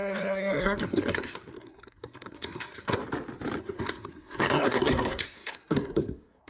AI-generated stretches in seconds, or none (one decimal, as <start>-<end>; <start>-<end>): 0.0-3.0; 3.6-6.5